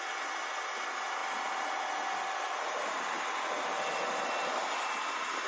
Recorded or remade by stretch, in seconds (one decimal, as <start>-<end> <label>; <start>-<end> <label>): 0.0-5.5 recorded

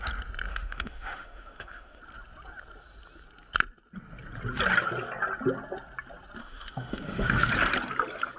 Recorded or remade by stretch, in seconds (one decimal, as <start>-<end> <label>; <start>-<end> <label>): 0.0-0.5 recorded; 0.5-2.0 remade; 2.0-6.4 recorded; 6.4-7.5 remade; 7.5-8.4 recorded